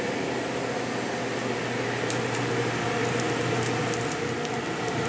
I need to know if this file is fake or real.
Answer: real